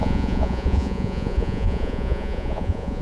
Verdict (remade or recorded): remade